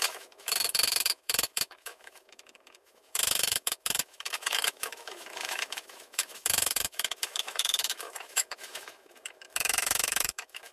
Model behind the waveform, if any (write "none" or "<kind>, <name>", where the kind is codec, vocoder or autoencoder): autoencoder, DAC-VAE